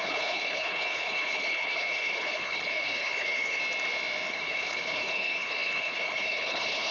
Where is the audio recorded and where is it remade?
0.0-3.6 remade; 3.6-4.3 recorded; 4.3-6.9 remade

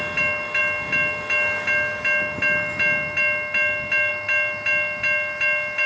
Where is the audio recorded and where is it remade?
0.0-5.9 recorded

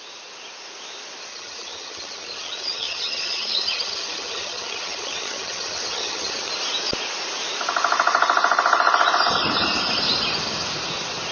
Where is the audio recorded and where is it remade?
0.0-1.3 recorded; 1.3-6.5 remade; 6.5-11.3 recorded